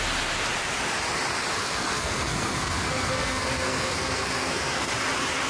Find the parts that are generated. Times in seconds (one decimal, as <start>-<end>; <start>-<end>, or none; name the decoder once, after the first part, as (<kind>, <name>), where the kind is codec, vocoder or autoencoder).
1.6-4.9 (codec, SNAC)